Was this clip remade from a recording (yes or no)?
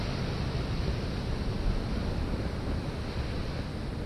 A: no